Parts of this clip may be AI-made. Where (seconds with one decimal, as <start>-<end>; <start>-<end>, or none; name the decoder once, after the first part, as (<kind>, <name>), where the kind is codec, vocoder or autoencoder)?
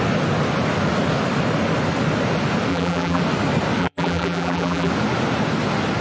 2.7-3.2 (vocoder, BigVGAN v2); 3.8-4.9